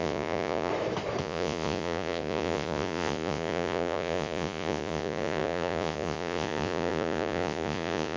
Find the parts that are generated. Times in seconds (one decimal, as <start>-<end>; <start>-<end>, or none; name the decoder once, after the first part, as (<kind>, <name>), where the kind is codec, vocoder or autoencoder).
0.0-0.7 (vocoder, Vocos); 1.2-8.2